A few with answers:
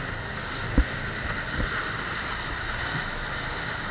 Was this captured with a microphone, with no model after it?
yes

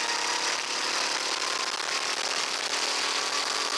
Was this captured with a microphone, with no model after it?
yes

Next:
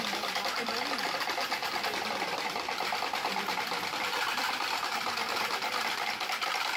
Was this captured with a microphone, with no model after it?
no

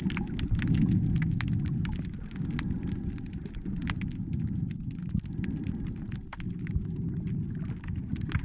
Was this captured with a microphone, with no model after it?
yes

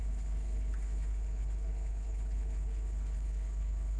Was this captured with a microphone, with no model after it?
no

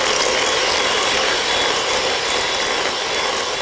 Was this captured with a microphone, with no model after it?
yes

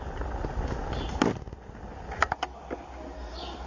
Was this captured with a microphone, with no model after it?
yes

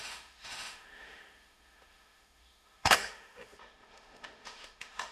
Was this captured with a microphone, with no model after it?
no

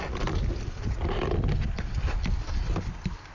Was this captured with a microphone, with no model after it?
yes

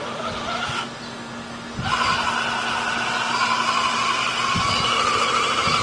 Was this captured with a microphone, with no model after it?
yes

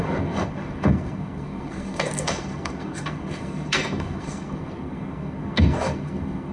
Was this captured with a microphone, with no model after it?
no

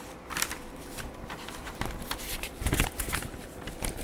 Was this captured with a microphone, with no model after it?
yes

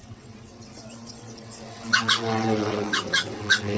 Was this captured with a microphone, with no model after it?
no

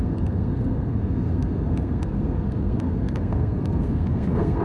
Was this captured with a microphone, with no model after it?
no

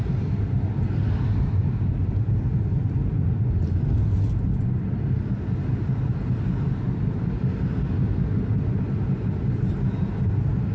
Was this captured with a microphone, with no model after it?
yes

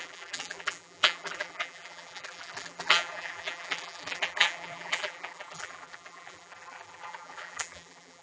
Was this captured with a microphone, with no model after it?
no